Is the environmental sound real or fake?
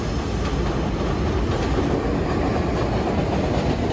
real